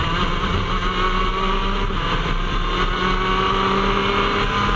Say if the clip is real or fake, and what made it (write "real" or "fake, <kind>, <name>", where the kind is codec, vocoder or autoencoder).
real